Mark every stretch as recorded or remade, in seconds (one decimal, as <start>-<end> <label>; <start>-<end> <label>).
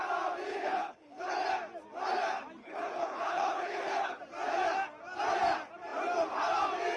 0.0-0.5 recorded; 0.5-1.3 remade; 1.3-2.6 recorded; 2.6-4.2 remade; 4.2-7.0 recorded